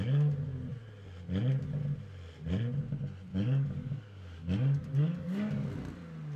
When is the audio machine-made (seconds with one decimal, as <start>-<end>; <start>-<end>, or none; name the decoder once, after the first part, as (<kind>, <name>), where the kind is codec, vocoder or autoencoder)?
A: 3.3-5.5 (codec, DAC)